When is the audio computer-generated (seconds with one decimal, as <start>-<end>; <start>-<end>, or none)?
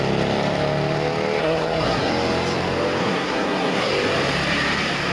1.4-2.1; 3.0-3.9